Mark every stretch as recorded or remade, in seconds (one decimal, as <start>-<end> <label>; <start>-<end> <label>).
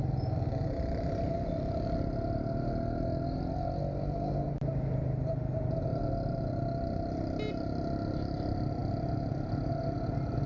0.0-10.5 recorded